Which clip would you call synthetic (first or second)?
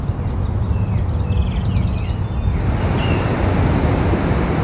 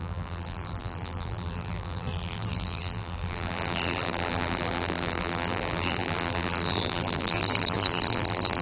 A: second